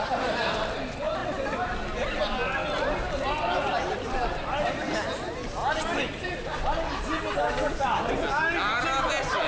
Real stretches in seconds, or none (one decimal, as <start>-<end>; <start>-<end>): 0.0-9.5